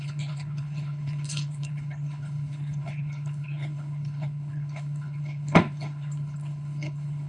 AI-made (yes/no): yes